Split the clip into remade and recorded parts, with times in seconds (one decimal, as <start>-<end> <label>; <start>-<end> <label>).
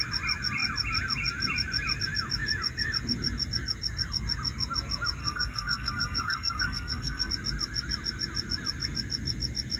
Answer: 0.0-5.2 recorded; 5.2-7.3 remade; 7.3-9.8 recorded